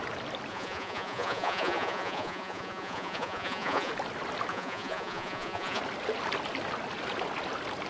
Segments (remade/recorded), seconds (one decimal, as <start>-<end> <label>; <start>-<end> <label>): 0.0-0.5 recorded; 0.5-3.9 remade; 3.9-4.5 recorded; 4.5-5.8 remade; 5.8-7.9 recorded